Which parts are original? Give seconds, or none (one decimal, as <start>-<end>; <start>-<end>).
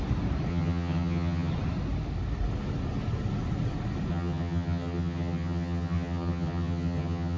0.0-0.5; 1.5-4.1